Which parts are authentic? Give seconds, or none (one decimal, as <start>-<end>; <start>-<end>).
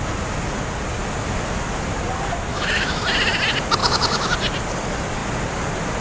0.0-2.5; 3.0-3.8; 4.3-6.0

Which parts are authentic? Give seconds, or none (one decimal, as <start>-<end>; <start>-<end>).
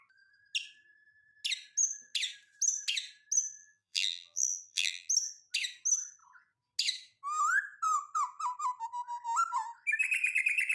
0.0-3.6; 5.1-10.7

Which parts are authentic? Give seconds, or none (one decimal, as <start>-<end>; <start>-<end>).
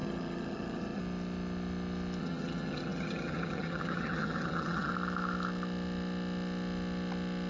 1.0-2.2; 4.9-7.5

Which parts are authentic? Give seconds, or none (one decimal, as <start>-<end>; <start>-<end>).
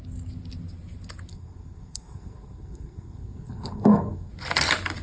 0.0-1.3; 4.3-5.0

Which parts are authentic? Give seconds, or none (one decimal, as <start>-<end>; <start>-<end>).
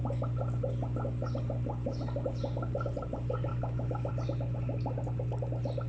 0.0-3.5; 4.1-5.9